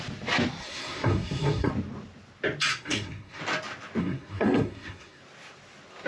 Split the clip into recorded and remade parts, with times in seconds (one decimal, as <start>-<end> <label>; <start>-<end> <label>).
0.0-0.6 recorded; 0.6-1.7 remade; 1.7-2.7 recorded; 2.7-3.4 remade; 3.4-4.0 recorded; 4.0-5.2 remade; 5.2-6.1 recorded